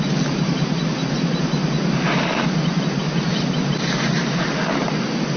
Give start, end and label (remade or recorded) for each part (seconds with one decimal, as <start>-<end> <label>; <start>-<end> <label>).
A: 0.0-5.4 recorded